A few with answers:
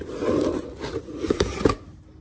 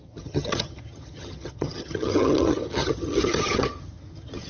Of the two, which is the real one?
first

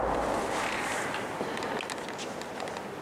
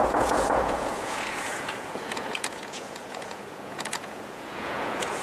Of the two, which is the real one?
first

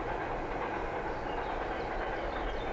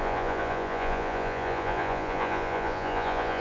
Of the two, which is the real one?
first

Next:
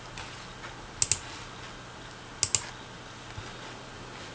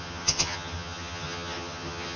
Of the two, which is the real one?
first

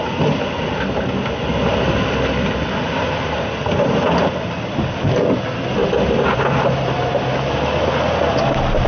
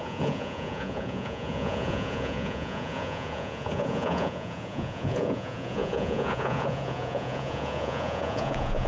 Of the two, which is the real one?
first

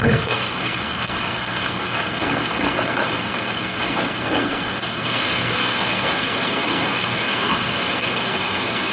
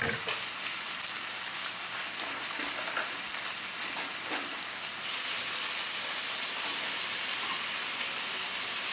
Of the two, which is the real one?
second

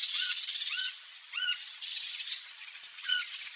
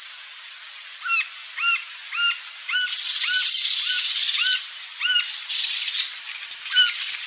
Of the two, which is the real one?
second